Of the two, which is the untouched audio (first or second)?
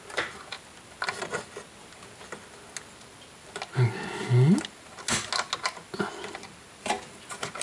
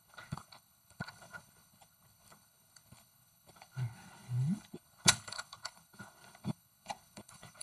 first